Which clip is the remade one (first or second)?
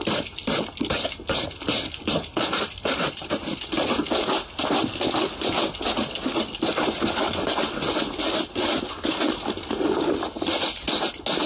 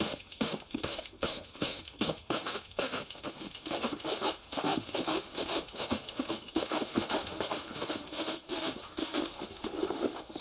second